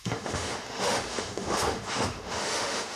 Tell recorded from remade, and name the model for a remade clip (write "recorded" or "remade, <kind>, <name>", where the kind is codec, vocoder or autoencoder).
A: remade, autoencoder, DAC-VAE